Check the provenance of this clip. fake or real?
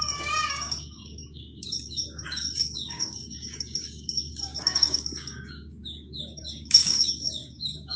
fake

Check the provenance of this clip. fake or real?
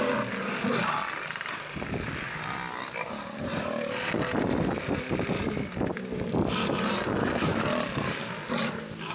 real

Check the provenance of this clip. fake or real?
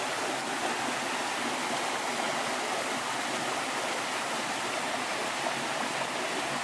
real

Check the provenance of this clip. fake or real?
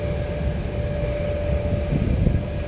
real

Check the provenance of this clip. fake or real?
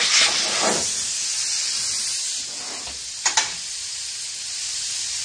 real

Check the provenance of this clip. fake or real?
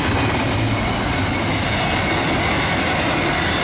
real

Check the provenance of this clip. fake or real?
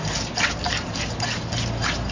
real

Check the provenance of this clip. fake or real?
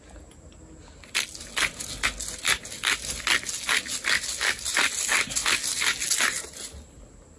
real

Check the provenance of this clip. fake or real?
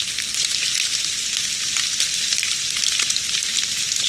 real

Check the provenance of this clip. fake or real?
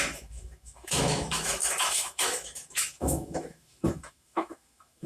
fake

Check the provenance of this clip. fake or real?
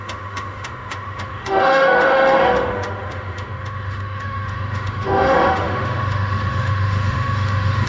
fake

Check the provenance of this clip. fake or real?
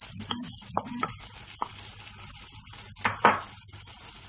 real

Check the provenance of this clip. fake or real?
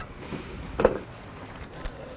real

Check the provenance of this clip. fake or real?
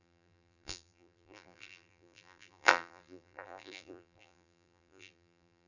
fake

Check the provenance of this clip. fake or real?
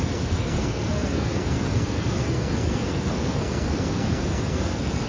fake